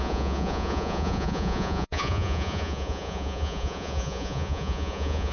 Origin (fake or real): fake